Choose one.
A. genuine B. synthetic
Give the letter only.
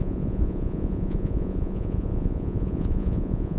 B